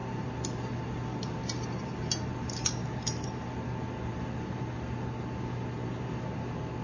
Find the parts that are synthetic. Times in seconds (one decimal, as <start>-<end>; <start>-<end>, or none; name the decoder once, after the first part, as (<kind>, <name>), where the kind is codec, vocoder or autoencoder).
none